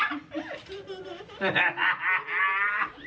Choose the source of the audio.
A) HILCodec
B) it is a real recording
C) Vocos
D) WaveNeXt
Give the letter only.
B